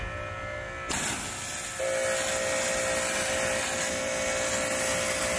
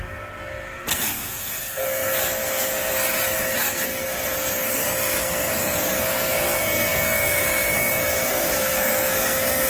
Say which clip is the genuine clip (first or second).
first